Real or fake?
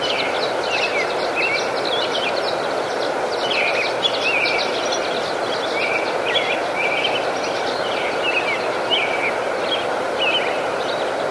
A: real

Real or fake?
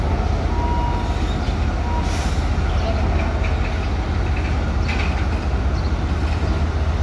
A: real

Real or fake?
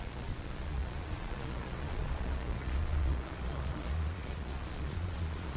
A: fake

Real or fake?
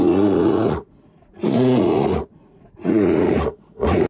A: fake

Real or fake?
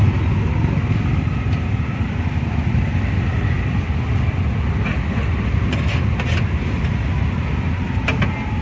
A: real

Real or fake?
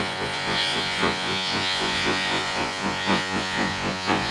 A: fake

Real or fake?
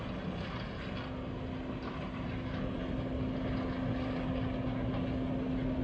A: real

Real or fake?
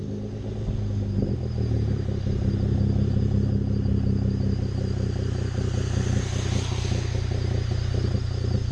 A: real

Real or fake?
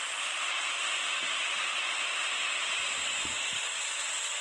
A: real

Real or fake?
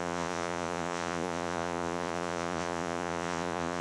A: fake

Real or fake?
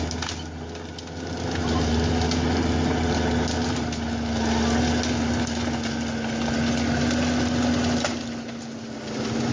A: real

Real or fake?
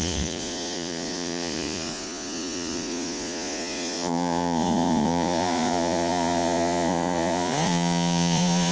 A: fake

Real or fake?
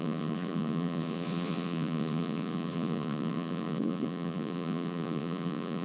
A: fake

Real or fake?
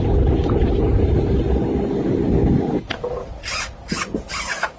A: real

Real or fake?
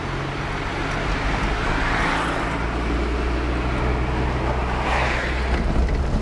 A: real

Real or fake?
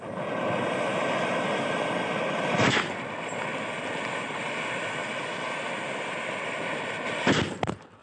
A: real